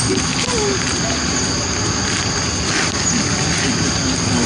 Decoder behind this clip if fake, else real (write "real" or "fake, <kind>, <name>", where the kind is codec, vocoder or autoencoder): real